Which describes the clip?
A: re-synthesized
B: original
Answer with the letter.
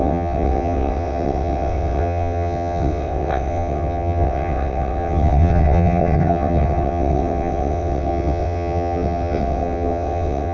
A